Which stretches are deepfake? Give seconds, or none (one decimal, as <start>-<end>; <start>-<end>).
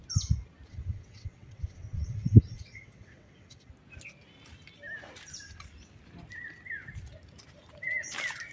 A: 0.7-3.7